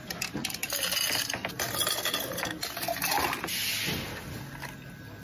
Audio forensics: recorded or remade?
recorded